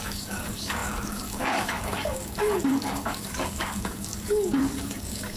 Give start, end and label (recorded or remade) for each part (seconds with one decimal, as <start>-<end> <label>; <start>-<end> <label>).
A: 0.0-5.4 remade